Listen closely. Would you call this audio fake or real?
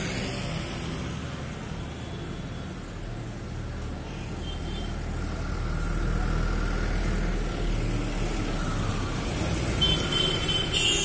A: real